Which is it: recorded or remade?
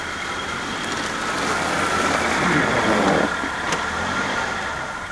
recorded